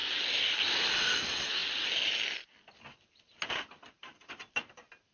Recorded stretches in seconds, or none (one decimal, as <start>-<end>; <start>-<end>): 0.0-5.1